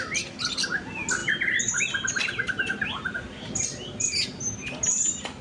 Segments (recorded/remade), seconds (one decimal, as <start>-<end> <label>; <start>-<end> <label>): 0.0-5.4 recorded